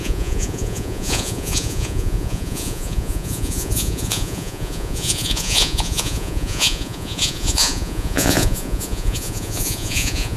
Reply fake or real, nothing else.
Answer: fake